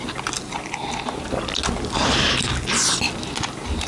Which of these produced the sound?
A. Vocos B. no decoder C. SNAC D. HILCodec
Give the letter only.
B